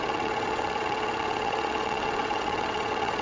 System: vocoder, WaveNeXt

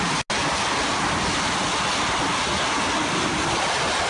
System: none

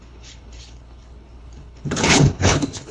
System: codec, HILCodec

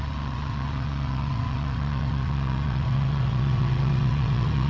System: vocoder, WaveNeXt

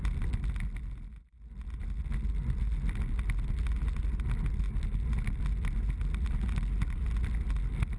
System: none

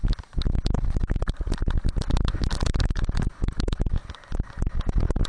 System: none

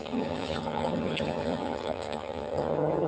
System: vocoder, HiFi-GAN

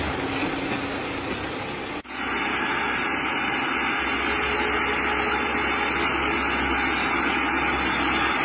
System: none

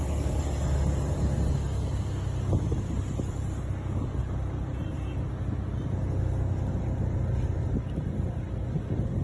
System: none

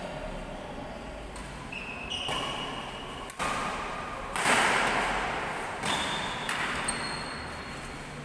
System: none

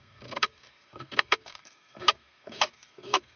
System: codec, SNAC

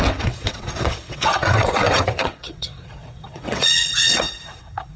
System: vocoder, WaveNeXt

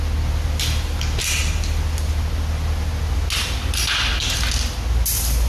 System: none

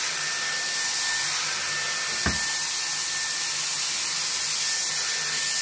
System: none